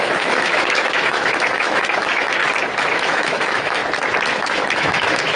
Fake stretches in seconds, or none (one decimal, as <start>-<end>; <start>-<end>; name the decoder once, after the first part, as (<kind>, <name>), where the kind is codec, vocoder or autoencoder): 0.0-2.4 (autoencoder, DAC-VAE); 2.9-3.8; 4.3-5.4